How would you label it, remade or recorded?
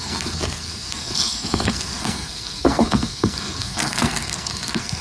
remade